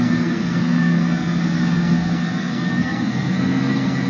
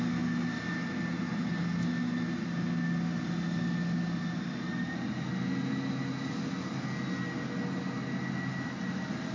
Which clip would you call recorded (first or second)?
second